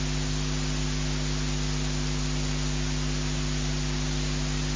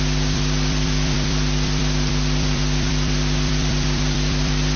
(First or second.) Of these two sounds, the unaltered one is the first